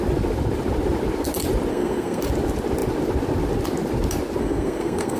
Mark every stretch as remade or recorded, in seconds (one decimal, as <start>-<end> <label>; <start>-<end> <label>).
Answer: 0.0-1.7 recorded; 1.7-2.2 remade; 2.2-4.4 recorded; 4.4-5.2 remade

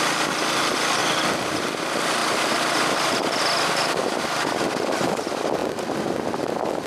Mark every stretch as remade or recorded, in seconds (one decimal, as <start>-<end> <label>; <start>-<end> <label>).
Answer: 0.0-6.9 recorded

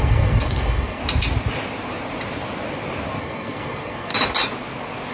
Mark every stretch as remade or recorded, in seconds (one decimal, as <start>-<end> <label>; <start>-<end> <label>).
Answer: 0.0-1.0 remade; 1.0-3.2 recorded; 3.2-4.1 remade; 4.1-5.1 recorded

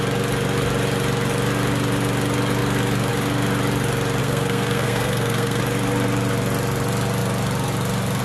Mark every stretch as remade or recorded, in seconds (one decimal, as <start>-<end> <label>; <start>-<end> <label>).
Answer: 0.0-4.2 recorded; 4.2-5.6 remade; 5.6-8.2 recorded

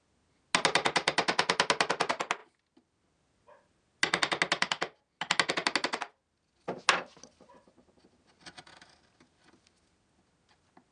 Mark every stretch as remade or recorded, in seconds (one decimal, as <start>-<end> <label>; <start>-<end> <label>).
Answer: 0.0-10.9 recorded

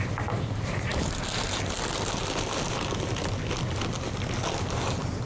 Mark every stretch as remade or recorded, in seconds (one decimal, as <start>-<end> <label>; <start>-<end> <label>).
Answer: 0.0-5.3 recorded

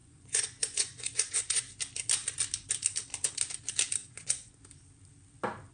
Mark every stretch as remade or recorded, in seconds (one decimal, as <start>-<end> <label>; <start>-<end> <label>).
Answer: 0.0-1.8 remade; 1.8-4.0 recorded; 4.0-4.6 remade; 4.6-5.7 recorded

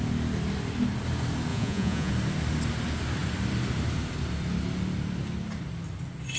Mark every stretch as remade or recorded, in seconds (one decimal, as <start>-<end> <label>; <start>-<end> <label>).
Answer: 0.0-1.5 recorded; 1.5-2.1 remade; 2.1-6.4 recorded